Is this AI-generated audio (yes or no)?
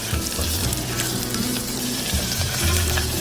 yes